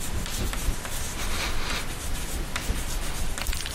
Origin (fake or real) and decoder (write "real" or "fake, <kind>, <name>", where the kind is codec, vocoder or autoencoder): real